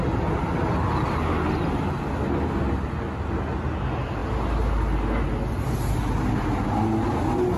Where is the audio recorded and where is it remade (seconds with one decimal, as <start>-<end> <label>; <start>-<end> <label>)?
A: 0.0-7.6 recorded